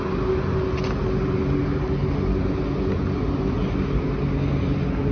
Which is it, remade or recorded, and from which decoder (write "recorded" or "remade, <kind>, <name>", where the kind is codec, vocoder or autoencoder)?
recorded